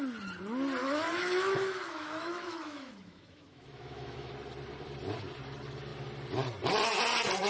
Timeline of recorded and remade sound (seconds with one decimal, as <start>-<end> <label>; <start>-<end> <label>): 0.0-0.8 recorded; 0.8-4.3 remade; 4.3-7.5 recorded

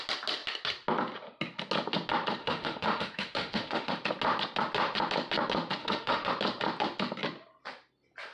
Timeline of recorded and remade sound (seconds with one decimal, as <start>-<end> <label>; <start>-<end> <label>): 0.0-2.4 recorded; 2.4-3.9 remade; 3.9-5.8 recorded; 5.8-6.3 remade; 6.3-8.3 recorded

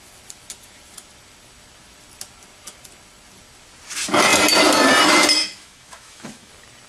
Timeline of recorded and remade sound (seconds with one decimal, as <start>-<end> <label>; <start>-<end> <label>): 0.0-5.4 recorded; 5.4-6.5 remade; 6.5-6.9 recorded

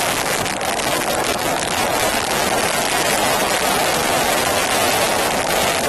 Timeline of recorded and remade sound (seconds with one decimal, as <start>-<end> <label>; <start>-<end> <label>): 0.0-1.1 recorded; 1.1-2.1 remade; 2.1-2.8 recorded; 2.8-3.6 remade; 3.6-5.9 recorded